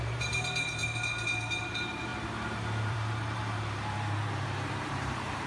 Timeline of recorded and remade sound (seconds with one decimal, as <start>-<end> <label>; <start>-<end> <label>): 0.0-0.8 remade; 0.8-1.6 recorded; 1.6-5.5 remade